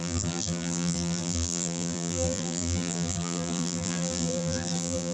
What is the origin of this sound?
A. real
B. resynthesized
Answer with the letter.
B